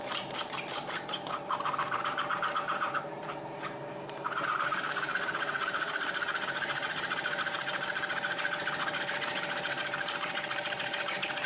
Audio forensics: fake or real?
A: fake